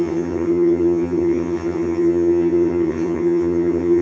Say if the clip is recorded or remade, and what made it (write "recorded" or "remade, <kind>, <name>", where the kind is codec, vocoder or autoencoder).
remade, vocoder, HiFi-GAN